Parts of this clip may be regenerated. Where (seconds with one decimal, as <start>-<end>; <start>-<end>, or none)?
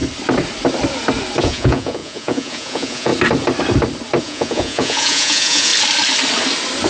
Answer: 1.4-3.1; 4.2-5.7